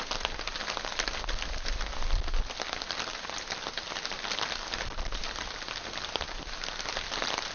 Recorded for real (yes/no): yes